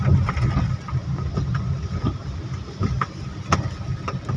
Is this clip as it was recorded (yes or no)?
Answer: yes